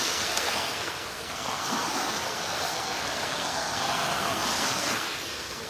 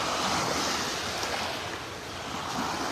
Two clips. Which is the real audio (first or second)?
second